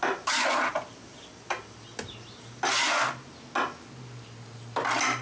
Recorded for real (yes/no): yes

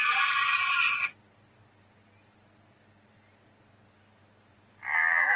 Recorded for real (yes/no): yes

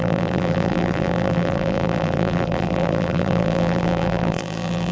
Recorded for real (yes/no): no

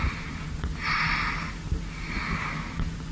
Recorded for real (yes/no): yes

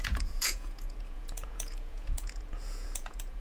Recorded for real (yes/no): no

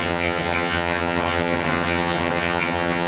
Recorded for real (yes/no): no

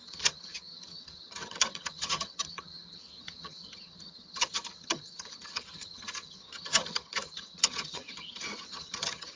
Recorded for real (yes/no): no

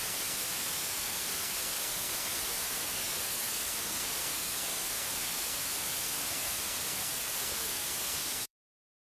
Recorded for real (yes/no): no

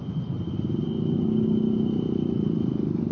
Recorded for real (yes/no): yes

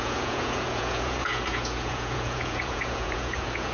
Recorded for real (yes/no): no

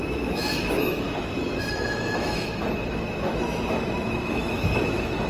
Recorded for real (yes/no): no